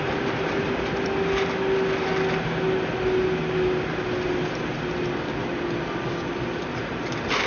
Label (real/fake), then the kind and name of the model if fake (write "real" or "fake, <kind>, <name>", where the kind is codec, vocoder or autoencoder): real